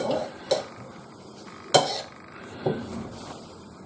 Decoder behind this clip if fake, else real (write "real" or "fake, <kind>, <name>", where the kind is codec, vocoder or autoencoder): real